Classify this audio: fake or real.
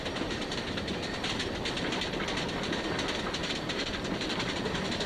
fake